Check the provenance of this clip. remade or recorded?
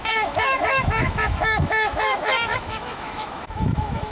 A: remade